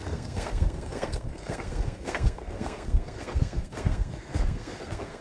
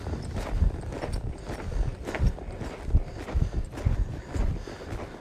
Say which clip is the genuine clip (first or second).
second